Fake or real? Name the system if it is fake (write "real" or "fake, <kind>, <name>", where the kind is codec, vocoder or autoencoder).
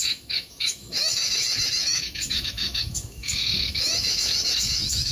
fake, autoencoder, DAC-VAE